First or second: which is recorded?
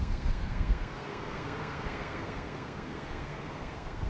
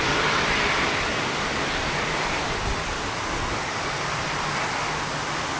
second